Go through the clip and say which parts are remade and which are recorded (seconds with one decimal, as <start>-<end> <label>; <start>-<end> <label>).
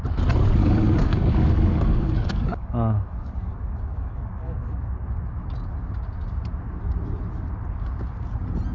0.0-0.6 recorded; 0.6-5.1 remade; 5.1-8.7 recorded